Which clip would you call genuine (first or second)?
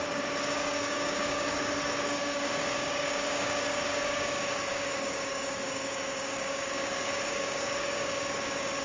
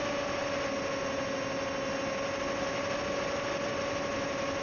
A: second